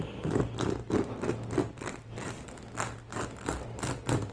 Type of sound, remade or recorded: recorded